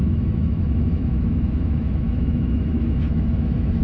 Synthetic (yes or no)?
yes